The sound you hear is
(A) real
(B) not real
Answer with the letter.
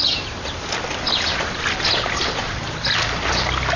A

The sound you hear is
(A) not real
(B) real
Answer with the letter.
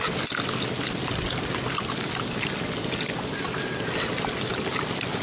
B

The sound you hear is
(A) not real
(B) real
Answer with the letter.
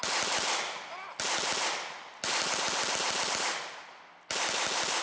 B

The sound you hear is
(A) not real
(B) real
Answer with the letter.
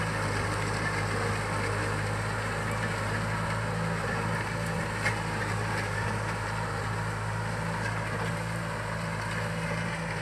B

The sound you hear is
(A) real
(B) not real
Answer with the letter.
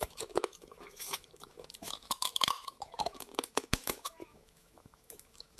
B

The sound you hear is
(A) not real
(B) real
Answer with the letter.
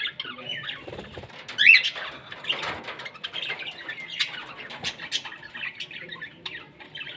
B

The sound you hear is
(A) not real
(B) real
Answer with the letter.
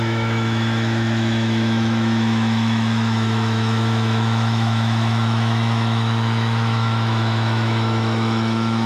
A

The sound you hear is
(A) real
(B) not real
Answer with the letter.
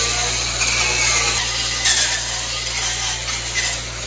A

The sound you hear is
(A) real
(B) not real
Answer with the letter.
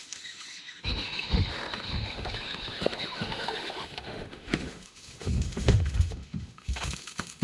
B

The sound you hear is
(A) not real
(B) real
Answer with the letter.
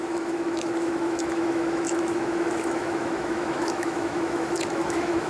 A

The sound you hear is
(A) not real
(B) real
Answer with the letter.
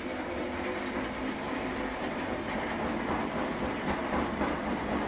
B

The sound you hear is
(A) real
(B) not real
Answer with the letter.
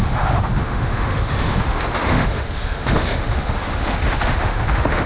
B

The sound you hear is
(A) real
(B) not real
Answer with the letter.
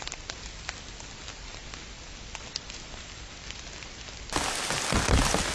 A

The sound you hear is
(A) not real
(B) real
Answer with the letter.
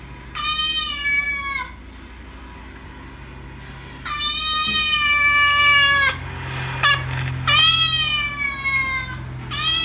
B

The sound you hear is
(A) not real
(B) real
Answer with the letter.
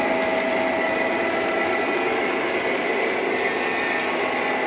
B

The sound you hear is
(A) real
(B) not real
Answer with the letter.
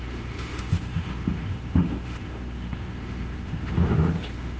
B